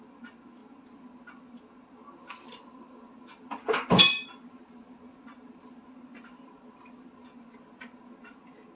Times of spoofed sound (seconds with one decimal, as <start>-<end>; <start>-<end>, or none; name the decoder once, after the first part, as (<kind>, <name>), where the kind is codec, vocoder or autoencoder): none